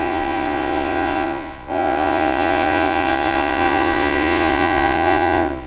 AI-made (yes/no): yes